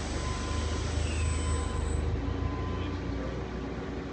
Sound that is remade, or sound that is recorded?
recorded